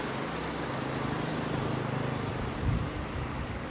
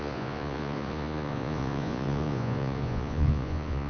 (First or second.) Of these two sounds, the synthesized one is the second